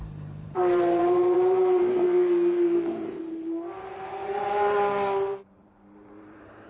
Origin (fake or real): fake